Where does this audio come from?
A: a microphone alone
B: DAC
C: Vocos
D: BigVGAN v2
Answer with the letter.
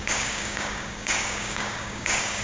B